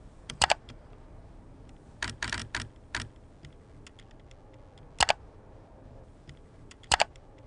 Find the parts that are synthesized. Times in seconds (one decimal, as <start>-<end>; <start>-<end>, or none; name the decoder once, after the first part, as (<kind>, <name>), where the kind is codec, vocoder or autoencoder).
0.0-2.4 (vocoder, BigVGAN v2); 5.2-7.5